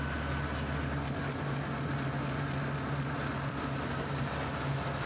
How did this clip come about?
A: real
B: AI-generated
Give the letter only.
A